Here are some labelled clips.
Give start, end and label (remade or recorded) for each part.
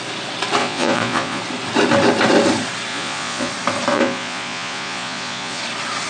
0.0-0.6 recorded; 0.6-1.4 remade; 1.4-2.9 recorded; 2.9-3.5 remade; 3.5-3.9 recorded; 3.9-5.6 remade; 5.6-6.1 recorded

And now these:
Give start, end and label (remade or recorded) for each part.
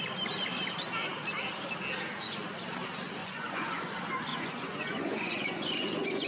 0.0-3.2 recorded; 3.2-3.9 remade; 3.9-4.3 recorded; 4.3-6.3 remade